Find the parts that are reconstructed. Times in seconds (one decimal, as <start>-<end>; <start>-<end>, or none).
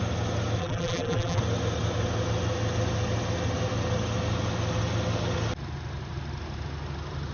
0.6-1.4